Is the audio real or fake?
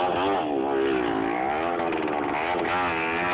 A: real